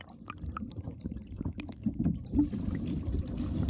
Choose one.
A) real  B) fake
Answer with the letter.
A